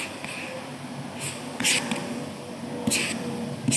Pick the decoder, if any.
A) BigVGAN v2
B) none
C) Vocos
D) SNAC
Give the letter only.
B